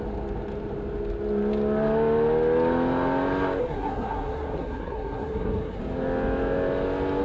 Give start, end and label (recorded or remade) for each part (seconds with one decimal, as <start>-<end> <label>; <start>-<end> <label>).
0.0-3.6 recorded; 3.6-5.8 remade; 5.8-7.2 recorded